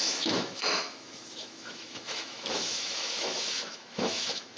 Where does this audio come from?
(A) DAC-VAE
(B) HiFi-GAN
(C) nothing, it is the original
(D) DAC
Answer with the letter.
A